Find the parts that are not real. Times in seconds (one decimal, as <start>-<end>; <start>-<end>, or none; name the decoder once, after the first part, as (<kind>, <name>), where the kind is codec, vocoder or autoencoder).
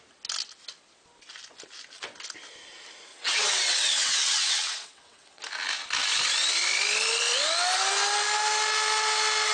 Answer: 3.1-5.4 (vocoder, WaveNeXt)